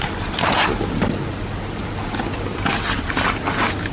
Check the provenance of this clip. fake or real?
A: real